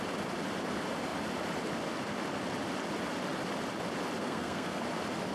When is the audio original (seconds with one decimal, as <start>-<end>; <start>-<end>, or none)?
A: 0.0-4.2; 4.8-5.3